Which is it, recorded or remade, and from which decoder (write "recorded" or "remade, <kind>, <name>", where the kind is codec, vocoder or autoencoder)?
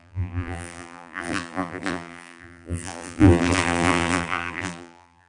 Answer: remade, vocoder, BigVGAN v2